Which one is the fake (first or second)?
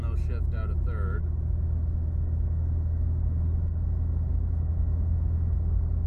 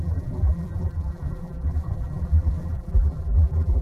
second